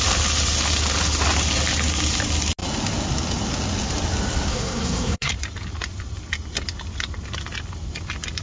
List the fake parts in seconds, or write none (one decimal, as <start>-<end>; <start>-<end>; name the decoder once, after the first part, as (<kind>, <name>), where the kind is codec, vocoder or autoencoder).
4.5-5.3 (codec, SNAC)